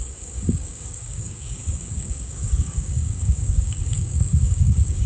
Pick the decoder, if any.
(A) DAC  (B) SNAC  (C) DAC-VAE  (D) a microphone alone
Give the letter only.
A